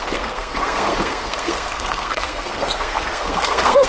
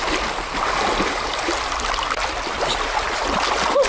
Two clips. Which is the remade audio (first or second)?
first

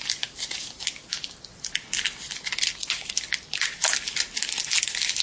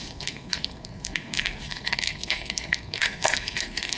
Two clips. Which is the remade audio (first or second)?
second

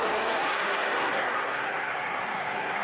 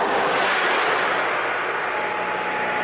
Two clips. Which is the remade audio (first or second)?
first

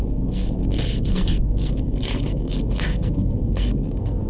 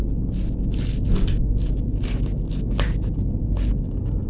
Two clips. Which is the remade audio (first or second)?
first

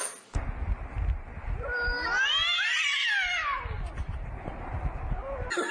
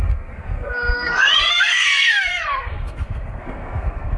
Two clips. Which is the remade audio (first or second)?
second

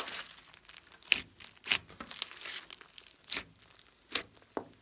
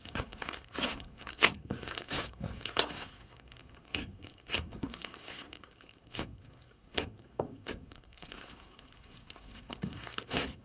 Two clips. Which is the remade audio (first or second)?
second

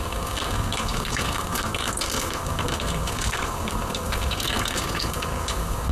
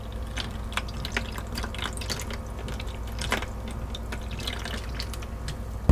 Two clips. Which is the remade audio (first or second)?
first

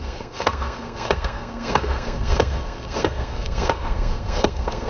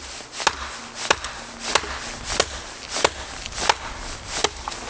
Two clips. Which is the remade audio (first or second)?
first